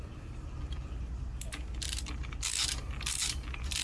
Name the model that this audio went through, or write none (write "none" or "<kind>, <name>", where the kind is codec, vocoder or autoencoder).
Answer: none